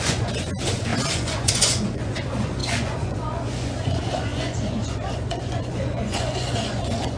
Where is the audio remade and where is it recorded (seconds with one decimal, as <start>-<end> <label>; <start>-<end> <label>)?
0.0-7.2 remade

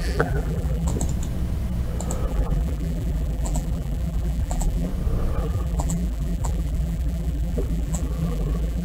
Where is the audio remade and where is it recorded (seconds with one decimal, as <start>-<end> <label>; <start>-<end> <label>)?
0.0-0.9 remade; 0.9-2.3 recorded; 2.3-4.9 remade; 4.9-5.4 recorded; 5.4-8.8 remade

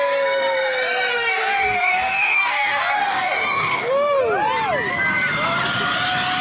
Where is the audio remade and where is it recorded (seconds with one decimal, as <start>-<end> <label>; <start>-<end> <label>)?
0.0-1.1 recorded; 1.1-4.2 remade; 4.2-6.4 recorded

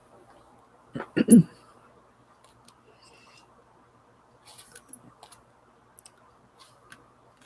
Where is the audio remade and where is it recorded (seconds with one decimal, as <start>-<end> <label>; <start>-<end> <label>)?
0.0-7.5 recorded

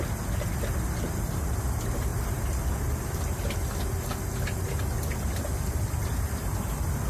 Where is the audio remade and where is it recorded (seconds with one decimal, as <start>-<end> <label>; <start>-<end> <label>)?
0.0-7.1 recorded